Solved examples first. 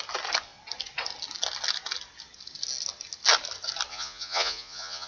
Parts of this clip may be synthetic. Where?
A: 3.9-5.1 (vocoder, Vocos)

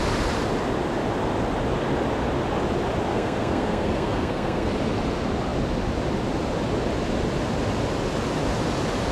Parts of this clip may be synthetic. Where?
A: 3.1-4.7 (codec, SNAC)

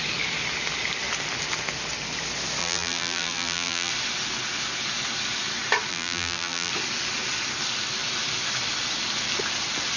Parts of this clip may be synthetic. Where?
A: 2.6-3.9 (vocoder, BigVGAN v2); 5.9-6.7

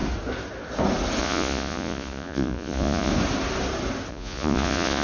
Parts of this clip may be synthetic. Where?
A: 1.2-3.1 (vocoder, Vocos); 4.1-5.0

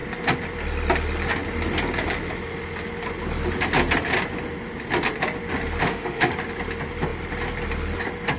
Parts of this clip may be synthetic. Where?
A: 5.8-6.3 (autoencoder, DAC-VAE)

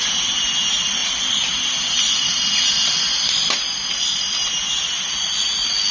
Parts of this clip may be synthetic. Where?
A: none

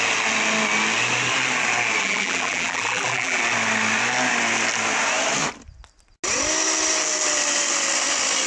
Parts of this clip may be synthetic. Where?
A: 2.0-3.4 (vocoder, BigVGAN v2)

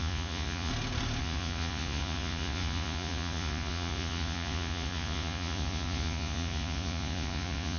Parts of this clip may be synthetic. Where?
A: 0.0-0.7 (vocoder, Vocos); 1.2-7.8